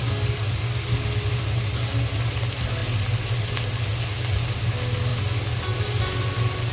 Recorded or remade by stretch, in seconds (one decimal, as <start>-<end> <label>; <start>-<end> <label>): 0.0-6.7 recorded